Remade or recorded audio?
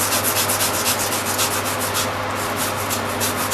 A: recorded